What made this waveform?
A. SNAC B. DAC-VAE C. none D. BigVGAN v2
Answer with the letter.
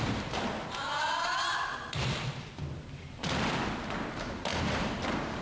D